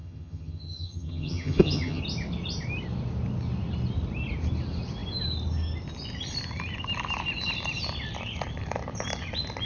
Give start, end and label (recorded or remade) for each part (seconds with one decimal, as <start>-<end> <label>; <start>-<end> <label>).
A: 0.0-2.0 remade; 2.0-9.7 recorded